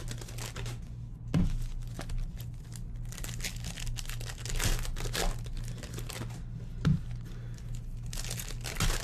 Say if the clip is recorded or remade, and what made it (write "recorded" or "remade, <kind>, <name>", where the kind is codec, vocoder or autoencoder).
recorded